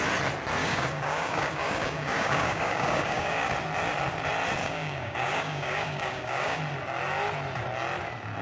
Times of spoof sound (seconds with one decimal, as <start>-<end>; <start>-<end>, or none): 0.6-3.5; 4.6-6.6